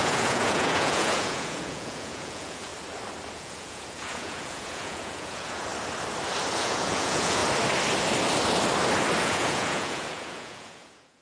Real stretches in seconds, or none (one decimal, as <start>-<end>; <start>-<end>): 2.7-3.3; 5.7-6.6; 7.4-9.2